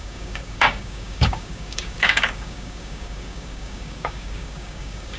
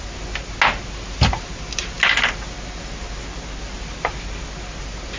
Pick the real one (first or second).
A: second